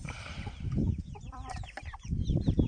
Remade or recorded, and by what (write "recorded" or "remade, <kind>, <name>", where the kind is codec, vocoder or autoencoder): remade, vocoder, BigVGAN v2